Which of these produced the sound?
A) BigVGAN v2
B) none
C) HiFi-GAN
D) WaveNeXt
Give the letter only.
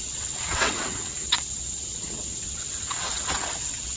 D